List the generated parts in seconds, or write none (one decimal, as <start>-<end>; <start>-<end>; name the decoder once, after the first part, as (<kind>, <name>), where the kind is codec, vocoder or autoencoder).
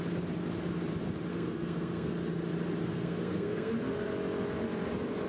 1.3-2.1 (codec, SNAC); 2.9-3.7